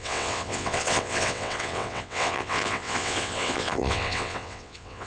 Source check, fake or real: fake